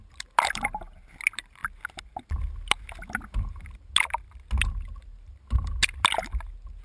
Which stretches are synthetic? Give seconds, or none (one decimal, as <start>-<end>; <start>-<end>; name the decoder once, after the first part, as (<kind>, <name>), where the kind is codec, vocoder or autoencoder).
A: none